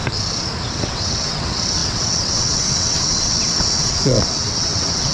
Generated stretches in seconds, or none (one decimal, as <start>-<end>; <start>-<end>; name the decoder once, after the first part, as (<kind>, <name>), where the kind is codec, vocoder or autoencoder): 0.7-5.1 (vocoder, WaveNeXt)